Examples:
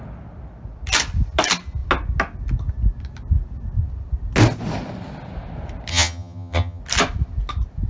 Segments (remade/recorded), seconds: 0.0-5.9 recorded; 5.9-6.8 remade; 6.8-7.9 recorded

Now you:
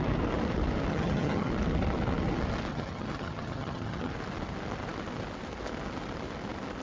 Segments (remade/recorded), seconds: 0.0-0.9 recorded; 0.9-1.5 remade; 1.5-2.7 recorded; 2.7-4.1 remade; 4.1-6.8 recorded

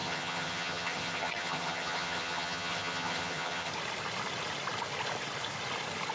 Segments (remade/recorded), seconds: 0.0-3.7 remade; 3.7-6.1 recorded

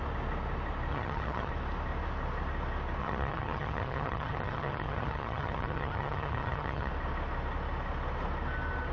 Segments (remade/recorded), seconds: 0.0-0.9 recorded; 0.9-1.5 remade; 1.5-3.0 recorded; 3.0-6.9 remade; 6.9-8.9 recorded

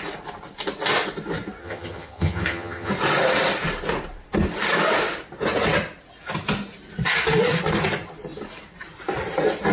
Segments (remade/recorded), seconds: 0.0-1.6 recorded; 1.6-2.9 remade; 2.9-9.7 recorded

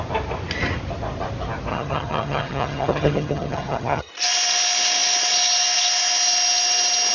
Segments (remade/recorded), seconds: 0.0-1.7 recorded; 1.7-4.1 remade; 4.1-7.1 recorded

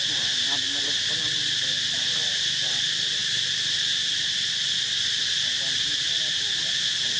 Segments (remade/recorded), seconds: 0.0-7.2 recorded